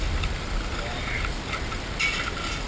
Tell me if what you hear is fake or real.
real